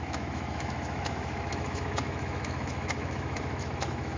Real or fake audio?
fake